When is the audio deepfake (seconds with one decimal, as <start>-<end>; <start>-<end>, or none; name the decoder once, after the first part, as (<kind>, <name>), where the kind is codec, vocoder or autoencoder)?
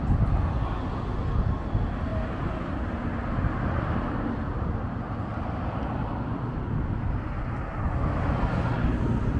none